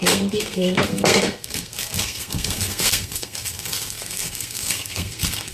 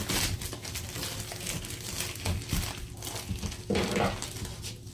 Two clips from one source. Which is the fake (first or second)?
first